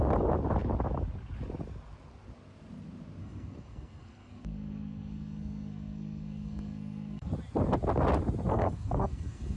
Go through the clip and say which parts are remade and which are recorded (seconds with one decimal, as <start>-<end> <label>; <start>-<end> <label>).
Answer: 0.0-3.2 recorded; 3.2-7.3 remade; 7.3-8.5 recorded; 8.5-9.6 remade